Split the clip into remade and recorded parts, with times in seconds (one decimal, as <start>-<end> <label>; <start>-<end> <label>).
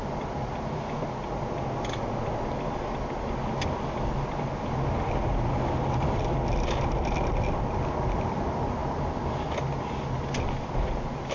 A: 0.0-11.3 recorded